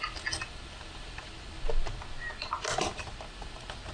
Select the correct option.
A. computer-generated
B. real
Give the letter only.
B